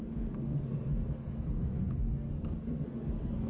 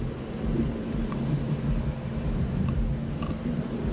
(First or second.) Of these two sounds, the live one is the second